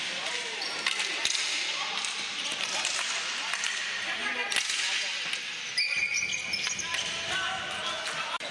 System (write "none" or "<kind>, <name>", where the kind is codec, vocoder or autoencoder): none